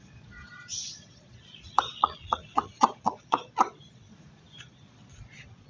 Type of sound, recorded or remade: remade